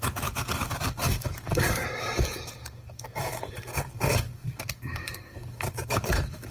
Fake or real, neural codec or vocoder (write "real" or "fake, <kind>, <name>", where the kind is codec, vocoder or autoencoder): fake, codec, DAC